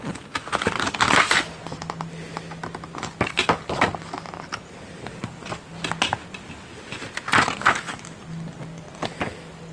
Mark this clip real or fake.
real